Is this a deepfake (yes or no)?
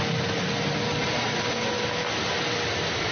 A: no